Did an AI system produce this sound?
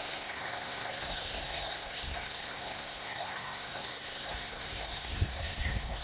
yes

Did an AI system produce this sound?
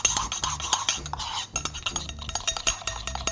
no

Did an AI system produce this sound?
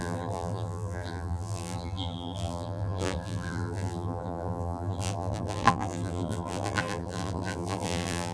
yes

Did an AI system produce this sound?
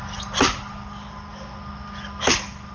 no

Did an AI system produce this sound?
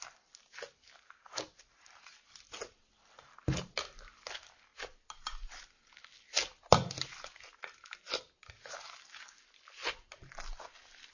no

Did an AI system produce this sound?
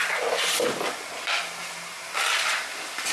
no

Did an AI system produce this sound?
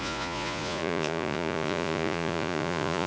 yes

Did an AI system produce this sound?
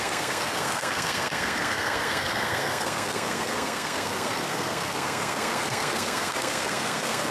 yes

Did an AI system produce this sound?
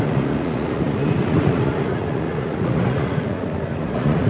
yes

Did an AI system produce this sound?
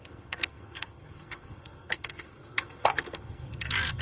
yes